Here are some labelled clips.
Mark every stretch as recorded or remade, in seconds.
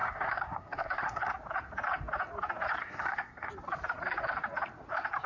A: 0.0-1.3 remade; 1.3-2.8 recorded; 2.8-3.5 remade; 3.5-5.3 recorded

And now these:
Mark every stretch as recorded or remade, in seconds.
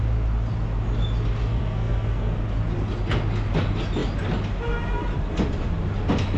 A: 0.0-1.4 recorded; 1.4-2.4 remade; 2.4-6.4 recorded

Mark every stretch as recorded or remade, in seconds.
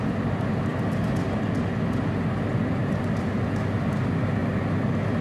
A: 0.0-5.2 recorded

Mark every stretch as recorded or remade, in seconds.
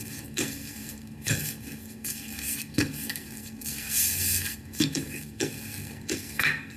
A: 0.0-6.8 remade